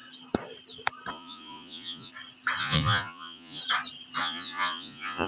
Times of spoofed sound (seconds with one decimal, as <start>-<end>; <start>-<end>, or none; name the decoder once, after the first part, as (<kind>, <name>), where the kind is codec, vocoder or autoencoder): 1.1-2.1 (vocoder, Vocos); 2.6-3.6; 4.2-5.3